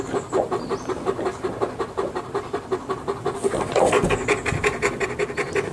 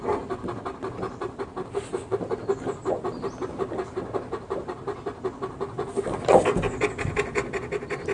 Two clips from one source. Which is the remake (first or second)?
first